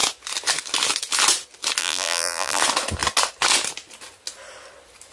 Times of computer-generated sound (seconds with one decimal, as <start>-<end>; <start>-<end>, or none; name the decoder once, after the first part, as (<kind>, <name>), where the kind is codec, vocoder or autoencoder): 1.8-2.6 (vocoder, BigVGAN v2)